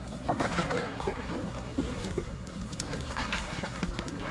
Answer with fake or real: fake